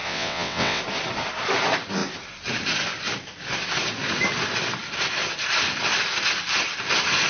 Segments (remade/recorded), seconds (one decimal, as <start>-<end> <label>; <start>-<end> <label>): 0.0-0.8 remade; 0.8-7.3 recorded